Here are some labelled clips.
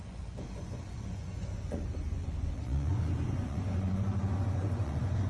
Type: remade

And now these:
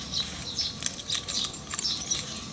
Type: recorded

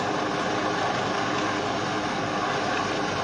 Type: recorded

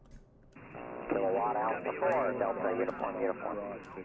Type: recorded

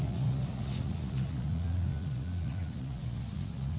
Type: remade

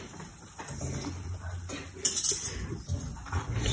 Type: recorded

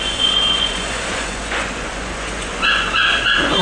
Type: remade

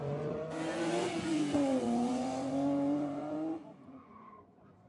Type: remade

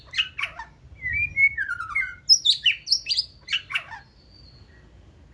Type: recorded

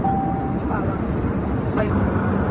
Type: recorded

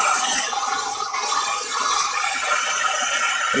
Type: recorded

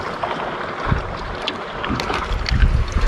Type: recorded